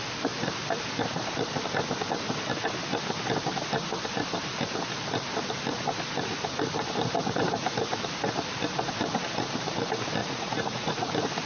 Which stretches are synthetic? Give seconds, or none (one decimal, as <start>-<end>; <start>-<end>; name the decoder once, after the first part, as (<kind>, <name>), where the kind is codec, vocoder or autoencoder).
10.2-11.1 (vocoder, Vocos)